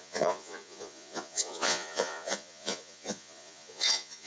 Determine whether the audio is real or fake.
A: fake